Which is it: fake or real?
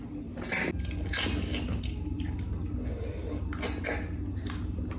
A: real